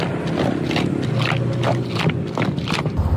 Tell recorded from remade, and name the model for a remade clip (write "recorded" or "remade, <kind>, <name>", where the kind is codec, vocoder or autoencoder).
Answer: recorded